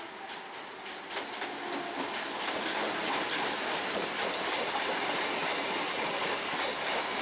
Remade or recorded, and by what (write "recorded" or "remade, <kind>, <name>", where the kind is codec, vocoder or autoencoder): recorded